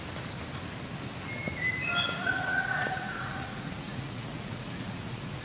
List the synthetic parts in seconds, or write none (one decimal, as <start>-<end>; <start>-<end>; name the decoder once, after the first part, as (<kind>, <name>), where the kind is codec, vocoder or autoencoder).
2.2-5.4 (vocoder, Vocos)